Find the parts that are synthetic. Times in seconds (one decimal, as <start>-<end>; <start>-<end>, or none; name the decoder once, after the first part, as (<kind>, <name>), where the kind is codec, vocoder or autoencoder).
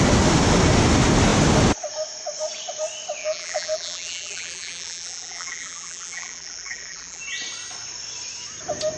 3.2-7.2 (vocoder, BigVGAN v2)